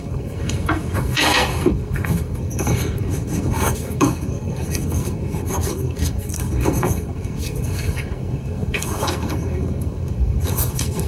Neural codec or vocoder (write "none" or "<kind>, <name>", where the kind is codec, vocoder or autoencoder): codec, SNAC